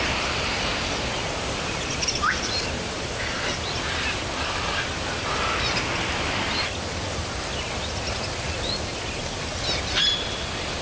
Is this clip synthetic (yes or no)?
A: no